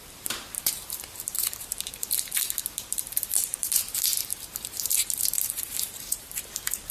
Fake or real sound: fake